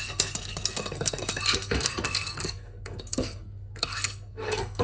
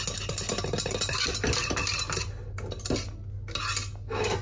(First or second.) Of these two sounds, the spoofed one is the first